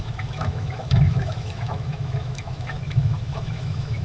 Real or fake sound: fake